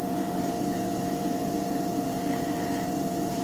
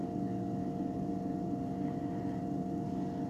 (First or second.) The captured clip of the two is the second